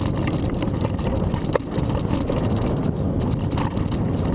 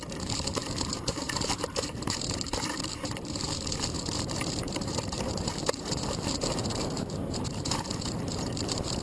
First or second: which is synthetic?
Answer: second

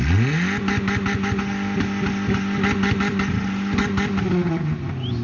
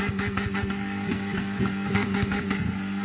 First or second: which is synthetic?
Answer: second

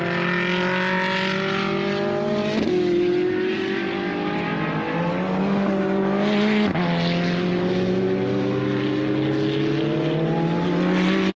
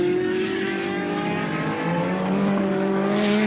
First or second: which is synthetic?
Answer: second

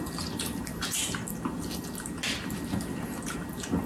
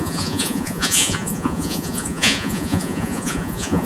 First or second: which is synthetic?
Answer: second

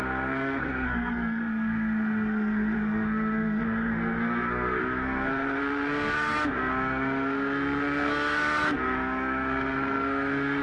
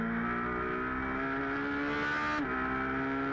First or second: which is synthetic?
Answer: first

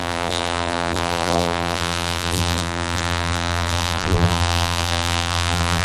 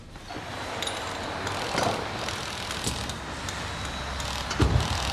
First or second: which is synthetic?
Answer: first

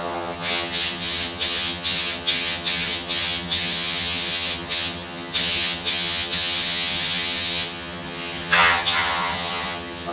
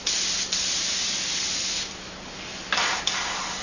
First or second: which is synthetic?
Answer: first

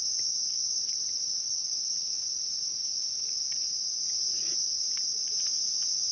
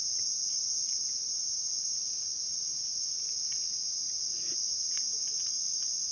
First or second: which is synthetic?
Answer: second